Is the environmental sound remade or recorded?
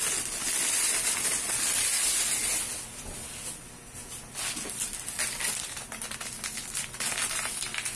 recorded